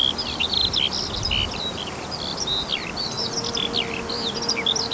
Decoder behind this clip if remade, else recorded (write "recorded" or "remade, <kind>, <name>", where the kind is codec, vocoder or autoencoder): recorded